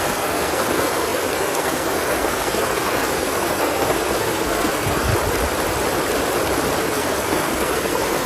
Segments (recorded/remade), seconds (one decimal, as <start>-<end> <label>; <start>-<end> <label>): 0.0-5.1 remade; 5.1-6.8 recorded; 6.8-8.3 remade